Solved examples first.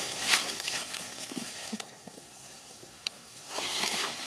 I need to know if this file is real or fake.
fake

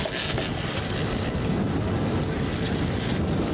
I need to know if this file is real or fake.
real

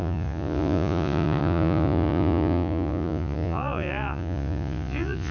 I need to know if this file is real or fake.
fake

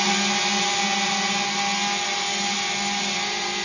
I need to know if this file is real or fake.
real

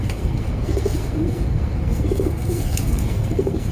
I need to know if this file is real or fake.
fake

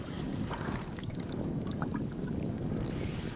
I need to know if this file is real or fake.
fake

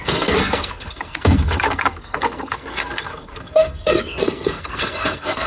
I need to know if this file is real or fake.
fake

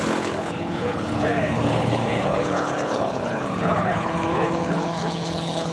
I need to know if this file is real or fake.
fake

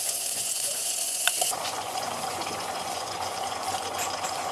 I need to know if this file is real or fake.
fake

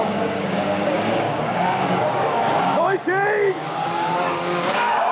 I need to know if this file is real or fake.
fake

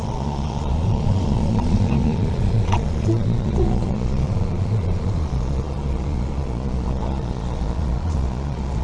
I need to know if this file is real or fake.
fake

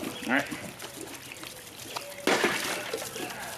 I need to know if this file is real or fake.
real